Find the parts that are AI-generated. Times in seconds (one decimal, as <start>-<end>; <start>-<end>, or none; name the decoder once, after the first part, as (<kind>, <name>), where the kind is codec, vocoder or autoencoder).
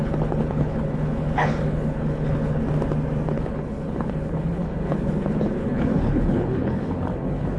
0.0-2.6 (codec, HILCodec); 3.3-7.6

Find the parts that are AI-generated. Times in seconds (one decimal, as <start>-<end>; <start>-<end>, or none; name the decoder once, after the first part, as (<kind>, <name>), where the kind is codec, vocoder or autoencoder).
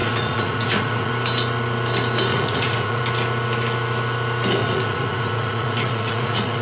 0.0-1.1 (vocoder, Vocos); 2.3-3.0; 4.6-6.6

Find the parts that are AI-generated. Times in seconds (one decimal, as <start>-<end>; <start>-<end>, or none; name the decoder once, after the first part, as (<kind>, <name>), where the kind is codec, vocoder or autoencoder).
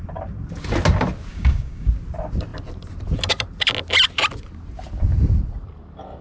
1.3-1.9 (codec, DAC)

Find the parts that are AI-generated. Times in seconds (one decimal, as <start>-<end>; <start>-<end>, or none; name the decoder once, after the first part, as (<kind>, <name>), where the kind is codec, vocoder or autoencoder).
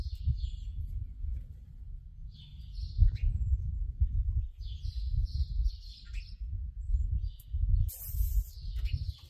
none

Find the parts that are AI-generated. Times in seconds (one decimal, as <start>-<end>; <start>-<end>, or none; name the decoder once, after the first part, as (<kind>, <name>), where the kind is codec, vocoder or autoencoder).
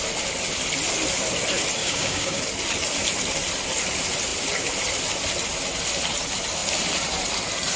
1.8-2.4 (codec, DAC)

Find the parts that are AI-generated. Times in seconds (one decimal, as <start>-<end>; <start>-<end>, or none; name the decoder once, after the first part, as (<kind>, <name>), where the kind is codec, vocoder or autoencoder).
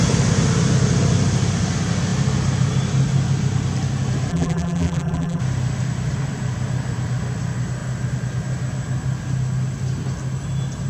4.3-5.4 (vocoder, BigVGAN v2)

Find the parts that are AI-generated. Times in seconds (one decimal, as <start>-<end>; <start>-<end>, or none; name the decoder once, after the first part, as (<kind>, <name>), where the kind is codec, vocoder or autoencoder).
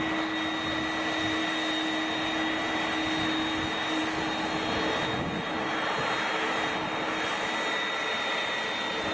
none